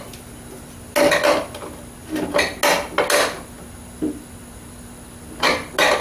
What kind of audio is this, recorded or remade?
recorded